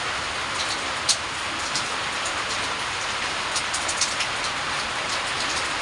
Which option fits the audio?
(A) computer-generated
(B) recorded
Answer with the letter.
A